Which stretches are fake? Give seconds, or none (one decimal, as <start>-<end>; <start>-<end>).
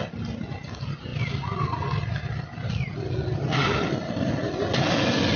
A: none